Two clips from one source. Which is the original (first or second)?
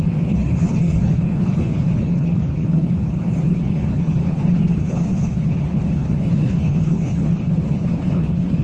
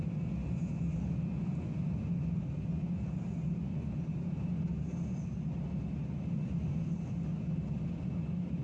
second